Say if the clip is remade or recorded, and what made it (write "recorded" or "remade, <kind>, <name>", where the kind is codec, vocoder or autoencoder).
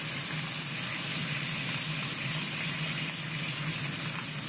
remade, vocoder, BigVGAN v2